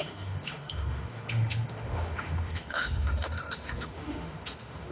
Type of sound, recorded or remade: remade